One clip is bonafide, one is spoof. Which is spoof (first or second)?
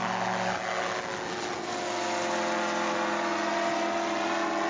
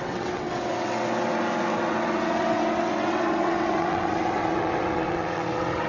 second